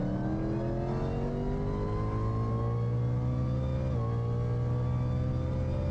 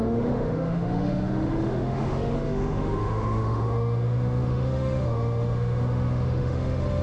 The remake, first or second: second